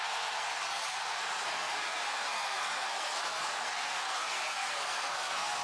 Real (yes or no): no